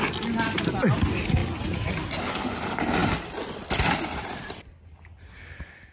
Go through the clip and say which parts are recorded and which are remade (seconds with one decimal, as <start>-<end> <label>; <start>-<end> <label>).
0.0-5.9 recorded